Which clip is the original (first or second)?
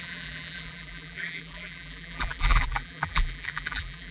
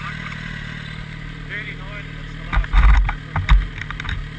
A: second